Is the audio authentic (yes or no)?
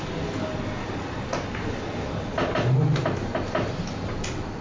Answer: yes